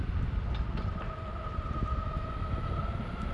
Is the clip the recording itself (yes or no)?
yes